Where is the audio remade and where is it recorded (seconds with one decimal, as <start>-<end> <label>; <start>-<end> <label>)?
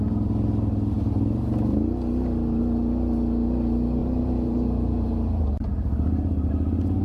0.0-4.0 recorded; 4.0-6.5 remade; 6.5-7.0 recorded